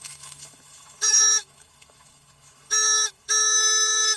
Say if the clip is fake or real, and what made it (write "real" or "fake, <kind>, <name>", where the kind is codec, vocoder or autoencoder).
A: fake, autoencoder, DAC-VAE